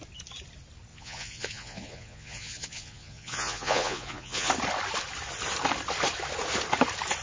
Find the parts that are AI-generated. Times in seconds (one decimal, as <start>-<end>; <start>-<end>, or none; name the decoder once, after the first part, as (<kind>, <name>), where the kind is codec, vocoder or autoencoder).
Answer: 0.9-4.5 (vocoder, Vocos)